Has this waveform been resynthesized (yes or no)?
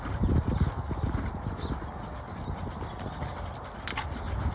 no